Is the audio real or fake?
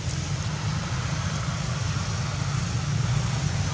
real